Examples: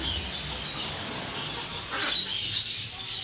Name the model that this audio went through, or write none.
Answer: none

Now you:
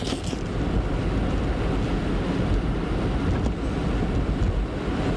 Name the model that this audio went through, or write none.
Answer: none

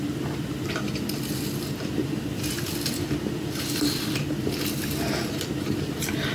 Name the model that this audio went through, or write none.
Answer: none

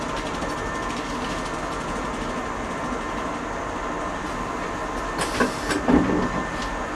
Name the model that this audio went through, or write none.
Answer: none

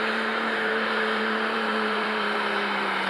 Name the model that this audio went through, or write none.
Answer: vocoder, BigVGAN v2